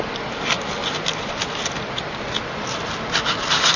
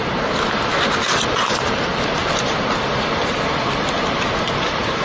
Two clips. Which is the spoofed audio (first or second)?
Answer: second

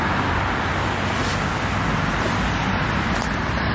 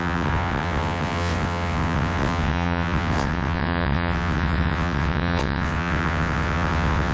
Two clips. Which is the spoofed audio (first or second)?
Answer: second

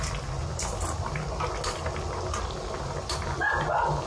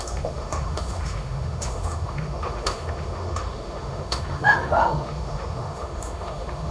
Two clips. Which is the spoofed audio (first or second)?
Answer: second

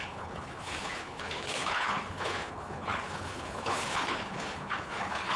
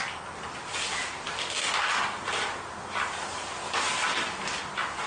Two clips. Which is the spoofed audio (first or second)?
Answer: first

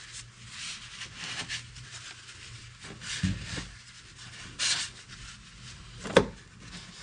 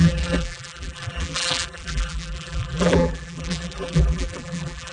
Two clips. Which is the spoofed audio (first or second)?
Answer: second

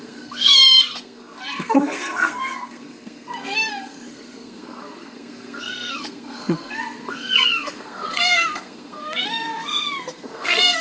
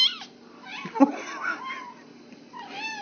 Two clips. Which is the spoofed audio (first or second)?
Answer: first